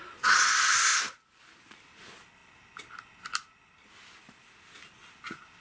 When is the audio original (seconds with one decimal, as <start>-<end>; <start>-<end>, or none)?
0.0-5.6